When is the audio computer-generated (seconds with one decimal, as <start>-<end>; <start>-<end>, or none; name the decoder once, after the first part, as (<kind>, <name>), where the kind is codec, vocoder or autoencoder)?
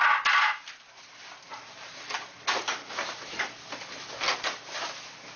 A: 1.5-3.9 (vocoder, BigVGAN v2)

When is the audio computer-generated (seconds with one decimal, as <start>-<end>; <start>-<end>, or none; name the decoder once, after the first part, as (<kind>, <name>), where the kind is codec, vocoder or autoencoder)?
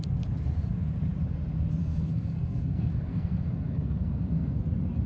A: 1.8-4.6 (codec, SNAC)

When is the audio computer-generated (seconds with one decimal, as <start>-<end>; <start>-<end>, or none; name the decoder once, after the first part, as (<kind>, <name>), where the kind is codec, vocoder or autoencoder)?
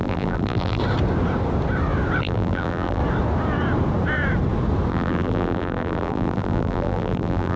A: 0.0-0.8 (vocoder, BigVGAN v2); 2.2-3.0; 4.9-7.6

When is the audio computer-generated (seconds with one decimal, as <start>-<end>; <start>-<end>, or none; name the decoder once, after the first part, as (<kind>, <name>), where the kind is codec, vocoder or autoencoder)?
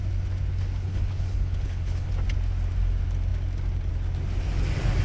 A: 0.5-2.1 (codec, HILCodec)